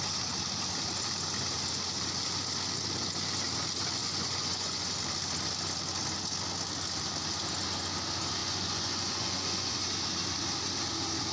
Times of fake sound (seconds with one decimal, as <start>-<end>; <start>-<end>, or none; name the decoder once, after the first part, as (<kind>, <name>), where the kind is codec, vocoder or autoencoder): 4.0-4.9 (vocoder, Vocos); 8.4-9.7